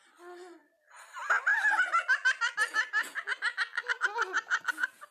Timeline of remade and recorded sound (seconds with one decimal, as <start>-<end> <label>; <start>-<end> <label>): 0.0-5.1 recorded